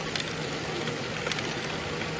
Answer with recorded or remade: recorded